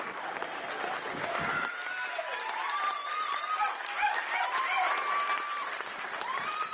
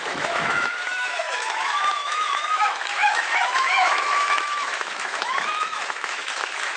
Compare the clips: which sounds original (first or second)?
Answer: first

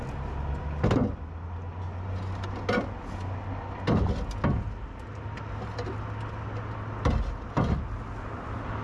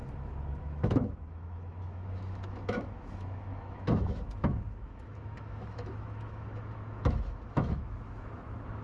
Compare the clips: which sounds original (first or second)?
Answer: first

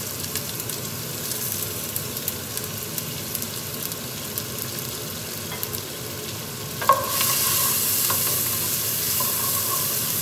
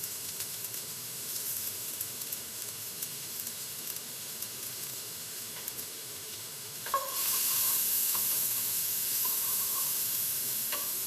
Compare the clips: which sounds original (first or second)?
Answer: first